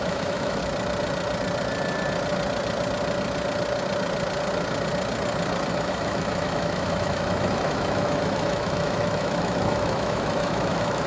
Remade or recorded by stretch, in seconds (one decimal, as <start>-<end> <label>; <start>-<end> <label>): 0.0-0.6 remade; 0.6-5.7 recorded; 5.7-11.1 remade